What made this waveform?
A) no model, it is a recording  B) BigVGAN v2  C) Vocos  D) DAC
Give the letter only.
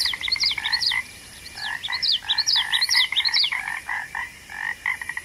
B